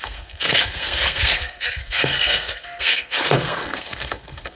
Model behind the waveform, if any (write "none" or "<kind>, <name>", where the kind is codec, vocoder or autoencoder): codec, SNAC